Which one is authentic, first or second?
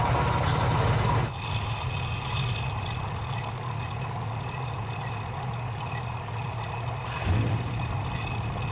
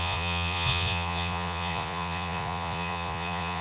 first